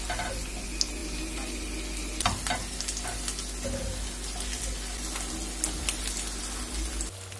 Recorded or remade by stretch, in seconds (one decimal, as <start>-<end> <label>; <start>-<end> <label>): 0.0-7.4 recorded